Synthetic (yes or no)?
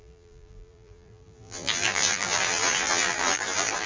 yes